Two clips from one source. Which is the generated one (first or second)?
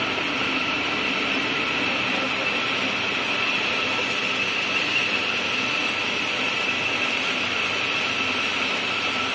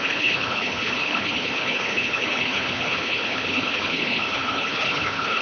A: second